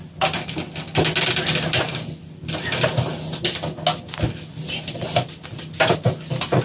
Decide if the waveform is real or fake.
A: real